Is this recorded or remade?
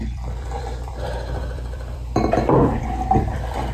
remade